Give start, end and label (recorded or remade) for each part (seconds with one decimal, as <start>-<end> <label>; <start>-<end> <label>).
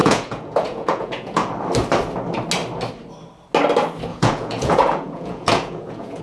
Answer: 0.0-1.5 remade; 1.5-4.1 recorded; 4.1-6.2 remade